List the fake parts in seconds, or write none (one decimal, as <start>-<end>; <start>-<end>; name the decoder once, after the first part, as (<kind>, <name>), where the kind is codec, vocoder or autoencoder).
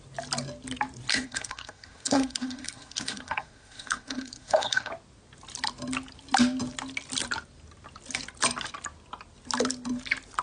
1.1-4.9 (codec, SNAC)